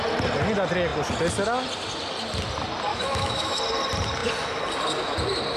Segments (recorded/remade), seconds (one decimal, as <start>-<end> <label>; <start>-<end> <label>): 0.0-2.9 recorded; 2.9-3.6 remade; 3.6-5.6 recorded